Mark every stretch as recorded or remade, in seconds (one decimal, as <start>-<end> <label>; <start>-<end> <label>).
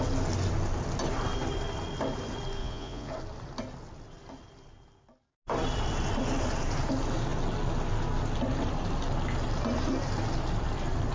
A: 0.0-2.6 recorded; 2.6-3.1 remade; 3.1-11.1 recorded